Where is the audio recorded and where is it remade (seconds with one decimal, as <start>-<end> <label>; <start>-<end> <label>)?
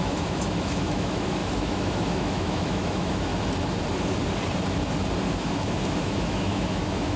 0.0-3.3 remade; 3.3-5.3 recorded; 5.3-7.2 remade